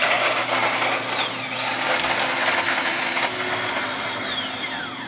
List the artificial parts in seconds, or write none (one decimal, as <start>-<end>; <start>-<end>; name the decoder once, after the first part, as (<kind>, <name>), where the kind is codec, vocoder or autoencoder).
none